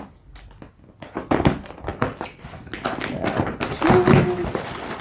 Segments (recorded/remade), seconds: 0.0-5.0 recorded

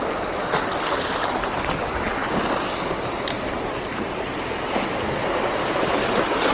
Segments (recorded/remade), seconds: 0.0-6.5 recorded

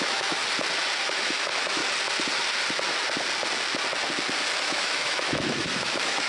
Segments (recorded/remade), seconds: 0.0-0.4 remade; 0.4-1.0 recorded; 1.0-1.8 remade; 1.8-4.6 recorded; 4.6-6.3 remade

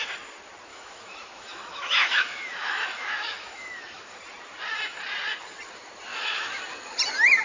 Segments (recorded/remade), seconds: 0.0-0.7 recorded; 0.7-4.2 remade; 4.2-6.1 recorded; 6.1-6.6 remade; 6.6-7.4 recorded

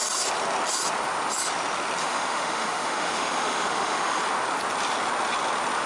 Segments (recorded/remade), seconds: 0.0-2.0 recorded; 2.0-4.2 remade; 4.2-5.9 recorded